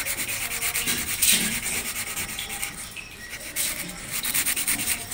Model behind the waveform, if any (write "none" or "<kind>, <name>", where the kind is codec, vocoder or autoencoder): vocoder, BigVGAN v2